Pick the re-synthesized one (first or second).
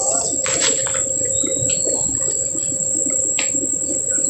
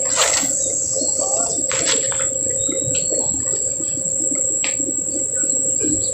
first